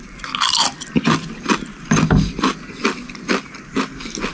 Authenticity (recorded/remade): recorded